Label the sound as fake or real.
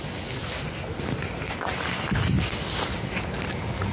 real